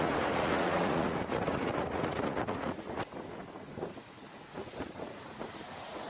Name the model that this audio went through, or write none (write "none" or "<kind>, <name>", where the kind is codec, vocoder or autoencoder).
vocoder, Vocos